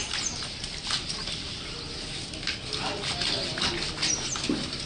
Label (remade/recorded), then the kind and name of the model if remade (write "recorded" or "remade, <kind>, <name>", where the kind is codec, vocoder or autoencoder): recorded